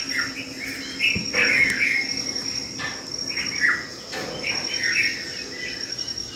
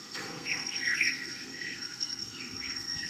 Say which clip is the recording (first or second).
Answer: first